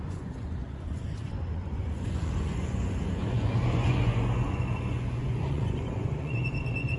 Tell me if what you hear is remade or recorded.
remade